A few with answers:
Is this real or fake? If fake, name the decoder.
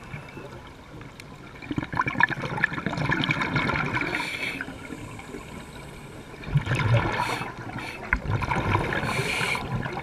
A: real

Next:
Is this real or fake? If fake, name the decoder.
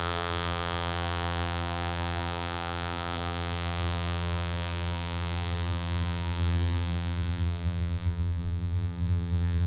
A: fake, vocoder, BigVGAN v2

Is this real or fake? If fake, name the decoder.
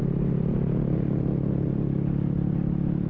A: real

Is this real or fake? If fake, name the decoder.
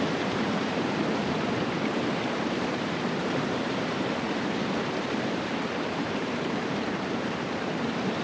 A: fake, vocoder, BigVGAN v2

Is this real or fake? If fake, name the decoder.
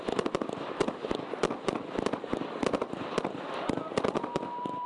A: fake, vocoder, BigVGAN v2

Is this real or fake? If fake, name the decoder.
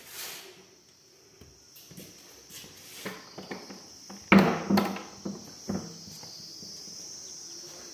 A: real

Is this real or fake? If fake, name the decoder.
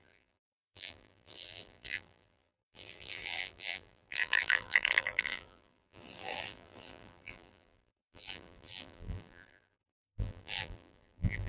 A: fake, vocoder, BigVGAN v2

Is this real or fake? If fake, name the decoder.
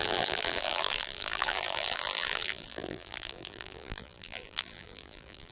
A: fake, vocoder, BigVGAN v2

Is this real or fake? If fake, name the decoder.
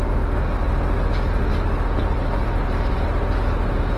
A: real